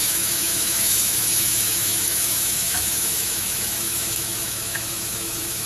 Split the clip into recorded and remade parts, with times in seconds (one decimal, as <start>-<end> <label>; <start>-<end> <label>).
0.0-5.7 remade